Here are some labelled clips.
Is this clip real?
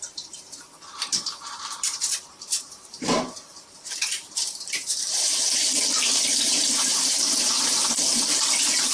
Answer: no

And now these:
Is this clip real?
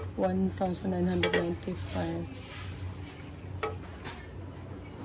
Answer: yes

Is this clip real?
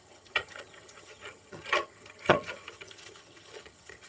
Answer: no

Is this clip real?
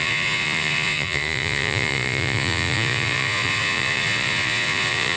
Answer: no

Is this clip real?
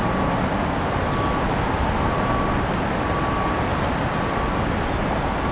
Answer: yes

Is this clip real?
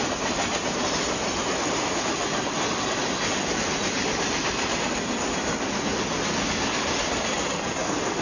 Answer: yes